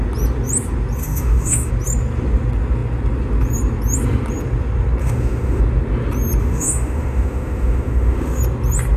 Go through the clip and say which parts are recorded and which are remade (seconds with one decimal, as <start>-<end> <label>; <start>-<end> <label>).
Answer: 0.0-1.0 recorded; 1.0-1.7 remade; 1.7-5.0 recorded; 5.0-5.6 remade; 5.6-6.4 recorded; 6.4-8.4 remade; 8.4-9.0 recorded